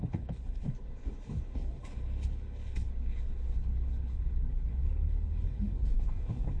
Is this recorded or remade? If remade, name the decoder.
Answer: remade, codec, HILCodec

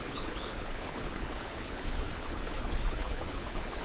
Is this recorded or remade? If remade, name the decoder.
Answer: remade, codec, HILCodec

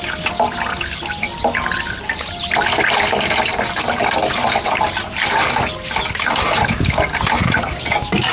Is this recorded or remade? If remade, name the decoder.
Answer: recorded